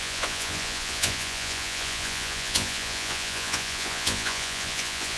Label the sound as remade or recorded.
remade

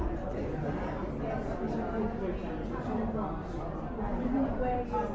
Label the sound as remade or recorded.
recorded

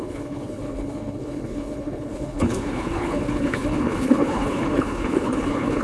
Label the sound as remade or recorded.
remade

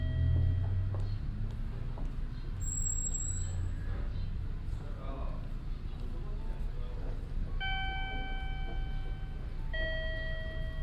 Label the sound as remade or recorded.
recorded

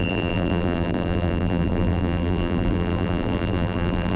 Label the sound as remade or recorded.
remade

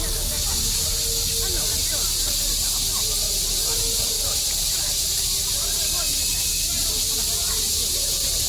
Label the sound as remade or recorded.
recorded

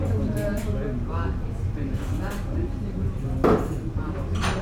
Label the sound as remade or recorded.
recorded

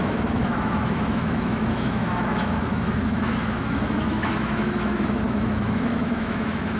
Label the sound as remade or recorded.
remade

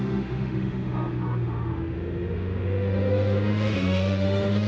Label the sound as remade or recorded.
remade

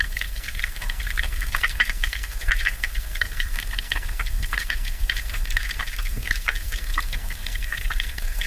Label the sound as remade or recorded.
remade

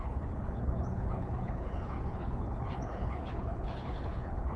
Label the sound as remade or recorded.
remade